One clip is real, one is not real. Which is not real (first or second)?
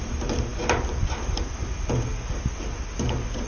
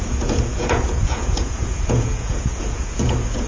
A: second